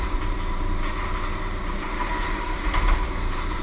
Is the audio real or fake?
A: fake